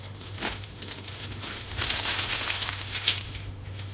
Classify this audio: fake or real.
fake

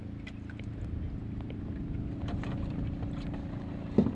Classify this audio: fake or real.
real